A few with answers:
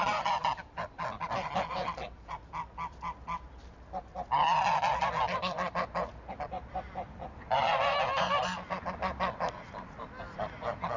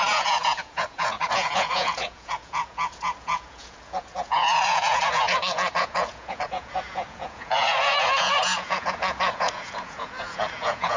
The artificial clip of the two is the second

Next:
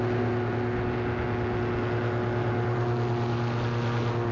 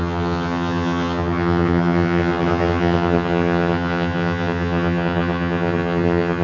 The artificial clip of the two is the second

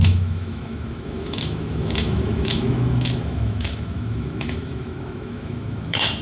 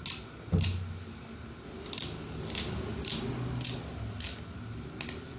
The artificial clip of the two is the first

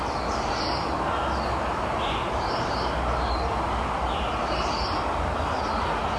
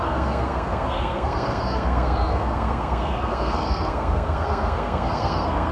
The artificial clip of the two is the second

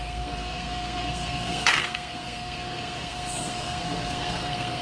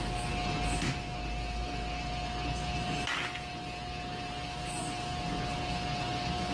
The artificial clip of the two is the first